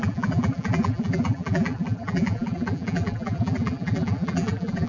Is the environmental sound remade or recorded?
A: remade